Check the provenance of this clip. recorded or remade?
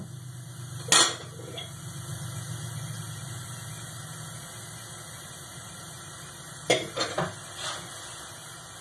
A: recorded